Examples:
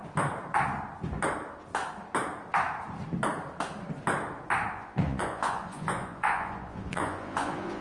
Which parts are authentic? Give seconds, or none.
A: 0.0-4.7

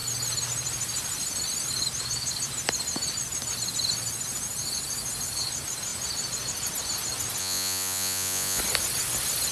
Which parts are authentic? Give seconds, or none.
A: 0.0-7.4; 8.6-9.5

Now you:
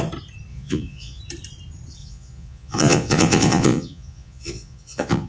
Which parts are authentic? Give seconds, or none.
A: 0.0-0.5; 1.2-2.0